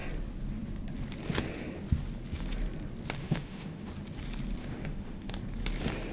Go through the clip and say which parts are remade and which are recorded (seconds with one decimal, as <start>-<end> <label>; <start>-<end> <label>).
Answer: 0.0-3.2 recorded; 3.2-3.9 remade; 3.9-4.6 recorded; 4.6-5.4 remade; 5.4-6.1 recorded